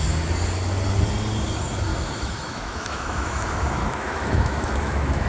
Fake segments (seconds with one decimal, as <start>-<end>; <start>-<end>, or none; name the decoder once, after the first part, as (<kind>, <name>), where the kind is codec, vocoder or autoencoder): 1.9-5.3 (autoencoder, DAC-VAE)